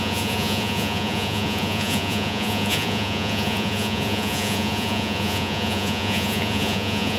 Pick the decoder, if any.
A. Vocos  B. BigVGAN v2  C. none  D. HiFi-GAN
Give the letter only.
A